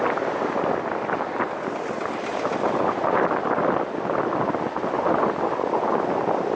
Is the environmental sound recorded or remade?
recorded